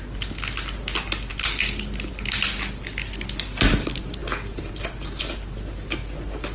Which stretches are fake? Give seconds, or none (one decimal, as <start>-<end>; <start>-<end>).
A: none